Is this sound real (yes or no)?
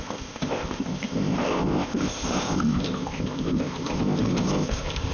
no